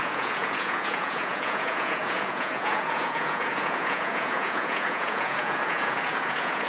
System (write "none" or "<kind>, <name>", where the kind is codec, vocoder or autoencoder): vocoder, Vocos